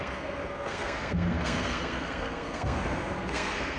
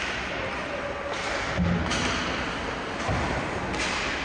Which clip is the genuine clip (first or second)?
second